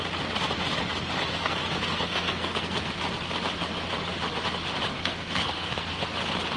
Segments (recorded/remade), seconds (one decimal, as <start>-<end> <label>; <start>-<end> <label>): 0.0-1.4 recorded; 1.4-2.9 remade; 2.9-4.9 recorded; 4.9-6.0 remade; 6.0-6.6 recorded